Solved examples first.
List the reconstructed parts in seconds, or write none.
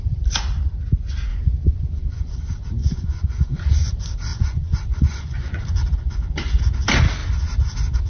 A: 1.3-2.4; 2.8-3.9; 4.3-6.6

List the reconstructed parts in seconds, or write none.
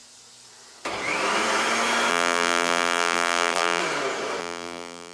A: 2.1-3.8; 4.4-5.1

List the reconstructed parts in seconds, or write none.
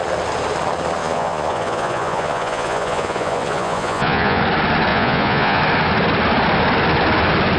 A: 1.0-4.4; 4.9-5.6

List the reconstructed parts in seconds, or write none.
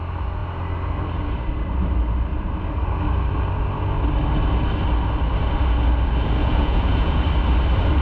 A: 6.4-7.2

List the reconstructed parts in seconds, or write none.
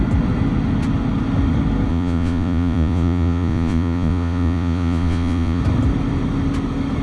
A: 1.9-5.6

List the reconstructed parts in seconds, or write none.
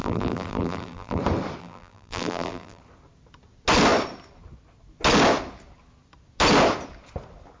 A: 0.0-1.2; 1.6-2.8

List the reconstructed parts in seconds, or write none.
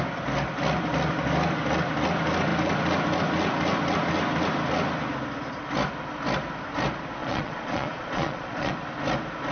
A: 7.2-8.7